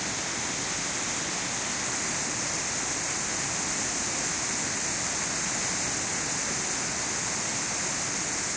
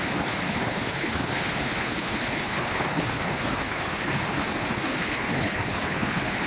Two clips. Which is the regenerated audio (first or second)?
second